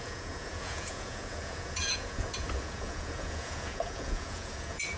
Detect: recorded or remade remade